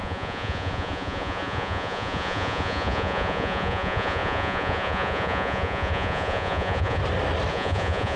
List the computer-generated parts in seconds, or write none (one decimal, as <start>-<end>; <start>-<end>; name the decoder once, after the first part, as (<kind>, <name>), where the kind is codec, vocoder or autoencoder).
0.0-7.0 (vocoder, Vocos); 7.5-8.2